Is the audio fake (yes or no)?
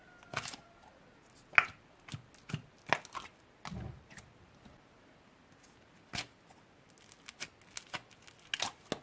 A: no